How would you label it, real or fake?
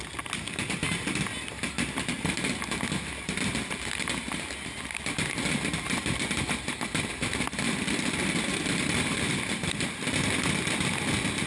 real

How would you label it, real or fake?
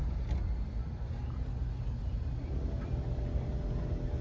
real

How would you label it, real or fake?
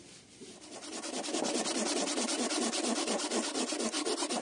fake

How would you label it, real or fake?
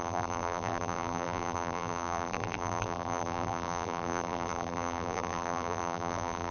fake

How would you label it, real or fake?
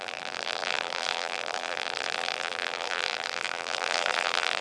fake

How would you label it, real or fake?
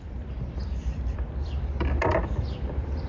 fake